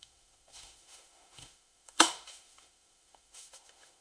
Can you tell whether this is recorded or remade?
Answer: remade